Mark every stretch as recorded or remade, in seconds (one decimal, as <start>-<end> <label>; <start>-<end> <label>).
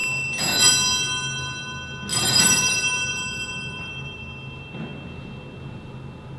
0.0-2.1 recorded; 2.1-4.2 remade; 4.2-6.4 recorded